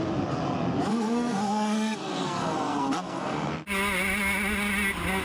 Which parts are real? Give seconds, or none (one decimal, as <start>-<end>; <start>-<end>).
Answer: 0.0-0.9; 3.5-5.2